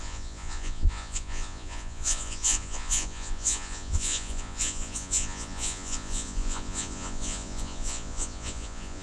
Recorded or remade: remade